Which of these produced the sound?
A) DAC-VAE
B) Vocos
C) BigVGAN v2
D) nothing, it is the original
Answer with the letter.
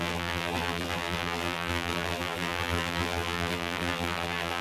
C